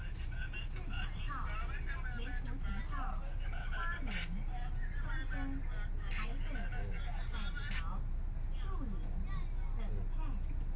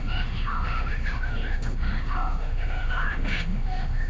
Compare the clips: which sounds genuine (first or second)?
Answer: first